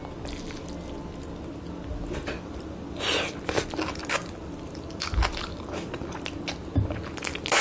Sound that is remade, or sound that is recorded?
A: recorded